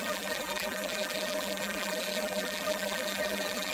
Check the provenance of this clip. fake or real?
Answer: fake